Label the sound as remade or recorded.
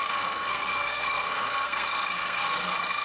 remade